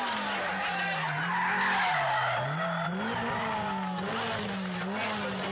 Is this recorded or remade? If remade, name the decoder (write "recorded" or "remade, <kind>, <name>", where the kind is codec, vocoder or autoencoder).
recorded